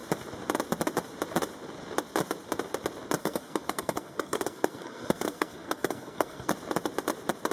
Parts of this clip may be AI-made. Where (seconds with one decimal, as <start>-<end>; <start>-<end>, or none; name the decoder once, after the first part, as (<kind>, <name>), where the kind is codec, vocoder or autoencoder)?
3.2-6.5 (codec, SNAC)